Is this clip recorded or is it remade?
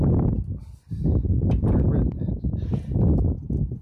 recorded